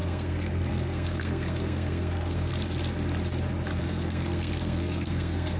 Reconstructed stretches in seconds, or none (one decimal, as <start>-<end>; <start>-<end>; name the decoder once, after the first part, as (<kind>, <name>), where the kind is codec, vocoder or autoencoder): 0.0-2.5 (codec, SNAC); 3.8-5.6